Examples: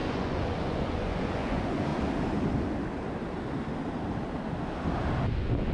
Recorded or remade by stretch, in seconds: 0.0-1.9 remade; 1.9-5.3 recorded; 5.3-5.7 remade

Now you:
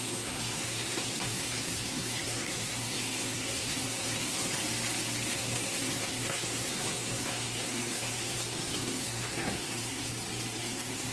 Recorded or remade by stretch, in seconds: 0.0-4.6 remade; 4.6-5.3 recorded; 5.3-10.1 remade; 10.1-10.6 recorded; 10.6-11.1 remade

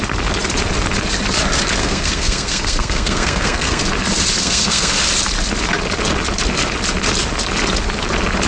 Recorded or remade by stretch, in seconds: 0.0-1.8 recorded; 1.8-3.8 remade; 3.8-4.4 recorded; 4.4-4.9 remade; 4.9-8.5 recorded

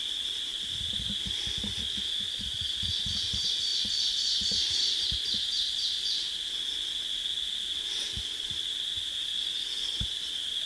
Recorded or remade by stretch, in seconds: 0.0-10.7 recorded